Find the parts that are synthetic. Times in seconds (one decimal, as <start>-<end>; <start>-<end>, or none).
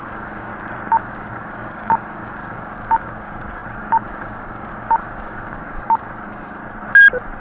0.0-0.5; 1.0-6.6